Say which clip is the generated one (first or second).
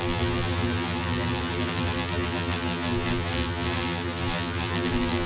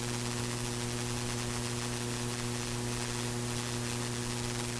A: first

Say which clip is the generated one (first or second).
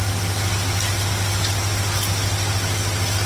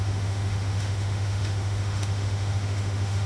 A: second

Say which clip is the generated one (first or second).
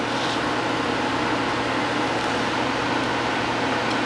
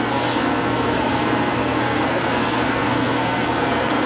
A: second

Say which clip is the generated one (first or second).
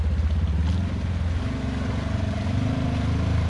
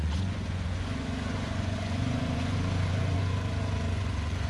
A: second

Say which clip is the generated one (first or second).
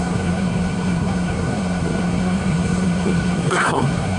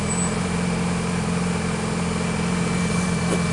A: first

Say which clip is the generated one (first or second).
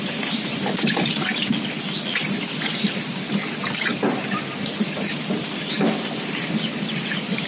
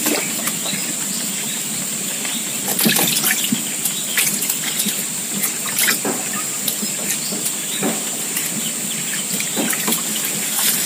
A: second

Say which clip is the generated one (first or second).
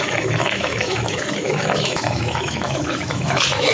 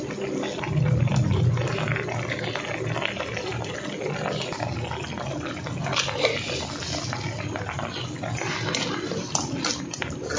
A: first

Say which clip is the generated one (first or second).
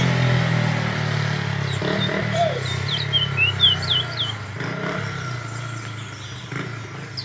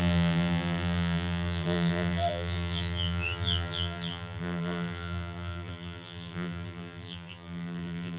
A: second